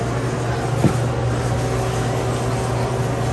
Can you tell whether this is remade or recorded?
recorded